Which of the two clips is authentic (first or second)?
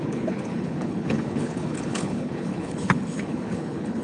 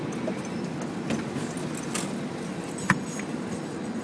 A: second